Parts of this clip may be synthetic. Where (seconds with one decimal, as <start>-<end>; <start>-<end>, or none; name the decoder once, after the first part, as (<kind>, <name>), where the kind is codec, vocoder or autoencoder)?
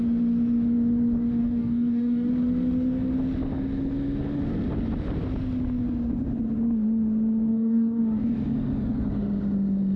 1.4-2.3 (codec, DAC); 7.5-8.0